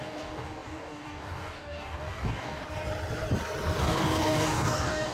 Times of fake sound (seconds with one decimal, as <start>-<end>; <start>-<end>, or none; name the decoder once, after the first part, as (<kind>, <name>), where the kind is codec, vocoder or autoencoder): 0.0-2.6 (codec, DAC); 3.8-5.1